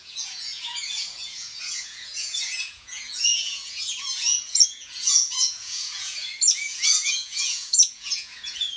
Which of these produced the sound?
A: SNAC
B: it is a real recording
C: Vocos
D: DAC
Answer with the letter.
C